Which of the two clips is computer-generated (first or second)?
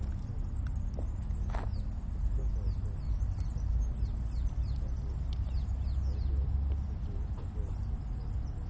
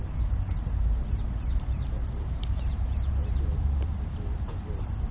second